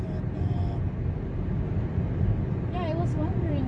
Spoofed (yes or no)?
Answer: no